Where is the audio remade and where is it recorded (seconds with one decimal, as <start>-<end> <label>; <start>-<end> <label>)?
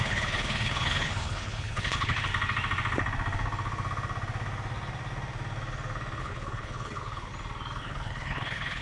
0.0-2.3 remade; 2.3-6.2 recorded; 6.2-7.3 remade; 7.3-7.8 recorded; 7.8-8.8 remade